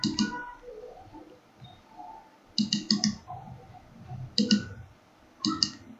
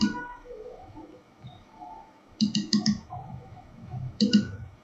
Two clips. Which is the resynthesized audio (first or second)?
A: second